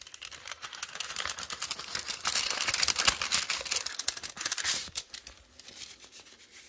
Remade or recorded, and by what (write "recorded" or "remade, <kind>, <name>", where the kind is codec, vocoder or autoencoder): recorded